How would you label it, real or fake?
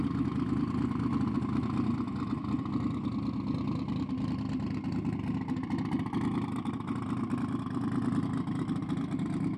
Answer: real